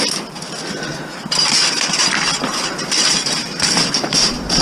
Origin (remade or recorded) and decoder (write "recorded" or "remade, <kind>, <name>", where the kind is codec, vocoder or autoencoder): recorded